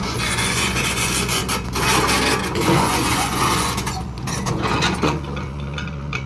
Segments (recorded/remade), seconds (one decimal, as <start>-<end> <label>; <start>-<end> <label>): 0.0-1.4 remade; 1.4-2.4 recorded; 2.4-6.3 remade